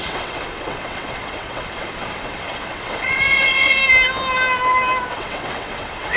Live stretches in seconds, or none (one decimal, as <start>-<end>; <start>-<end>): 3.8-5.1